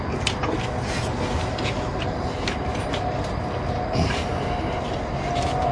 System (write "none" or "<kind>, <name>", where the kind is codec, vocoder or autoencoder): none